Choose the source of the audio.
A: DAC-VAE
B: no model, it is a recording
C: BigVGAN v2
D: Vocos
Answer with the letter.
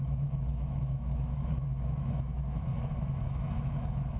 A